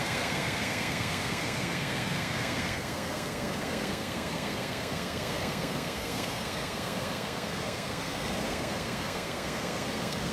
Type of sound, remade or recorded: remade